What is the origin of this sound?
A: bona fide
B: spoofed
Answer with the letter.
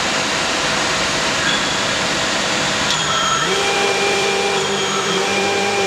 B